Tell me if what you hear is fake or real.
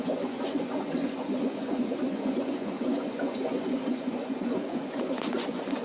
fake